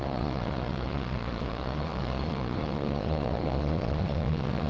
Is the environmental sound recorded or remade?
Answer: remade